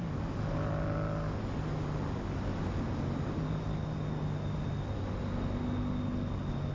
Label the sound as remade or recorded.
recorded